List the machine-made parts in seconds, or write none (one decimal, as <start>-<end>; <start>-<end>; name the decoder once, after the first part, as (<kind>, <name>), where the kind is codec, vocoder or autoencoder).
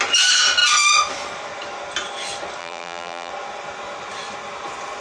2.6-3.3 (vocoder, BigVGAN v2)